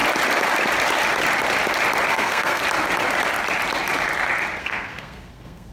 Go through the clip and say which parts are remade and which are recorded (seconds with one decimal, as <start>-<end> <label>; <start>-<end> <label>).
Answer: 0.0-2.1 recorded; 2.1-2.6 remade; 2.6-4.6 recorded; 4.6-5.7 remade